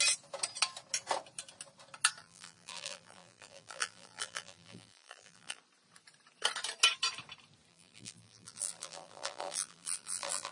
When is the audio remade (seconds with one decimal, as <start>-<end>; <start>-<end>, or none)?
2.2-5.6; 7.7-10.5